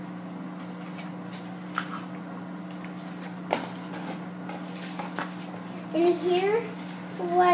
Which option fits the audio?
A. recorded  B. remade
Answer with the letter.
A